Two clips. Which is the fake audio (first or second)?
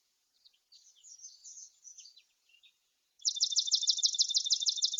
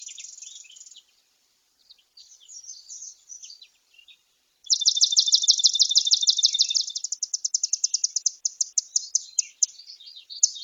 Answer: first